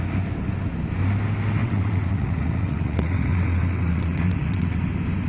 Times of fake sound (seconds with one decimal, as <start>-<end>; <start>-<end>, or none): 1.6-4.8